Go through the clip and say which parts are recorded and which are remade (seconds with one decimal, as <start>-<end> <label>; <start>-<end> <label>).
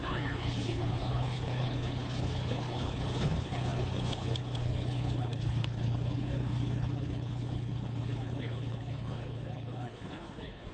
0.0-10.7 remade